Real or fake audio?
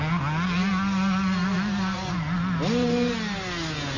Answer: real